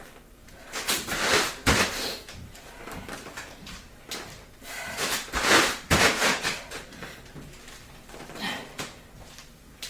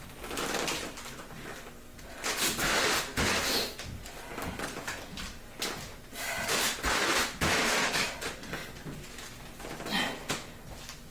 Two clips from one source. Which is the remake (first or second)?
first